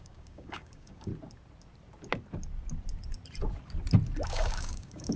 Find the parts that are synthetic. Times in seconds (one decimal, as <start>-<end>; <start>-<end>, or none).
0.0-1.1; 4.2-5.2